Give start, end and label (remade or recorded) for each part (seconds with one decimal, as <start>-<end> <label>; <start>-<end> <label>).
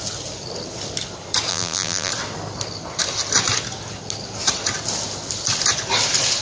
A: 0.0-1.5 recorded; 1.5-2.1 remade; 2.1-6.4 recorded